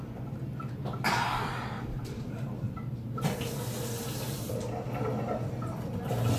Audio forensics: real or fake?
real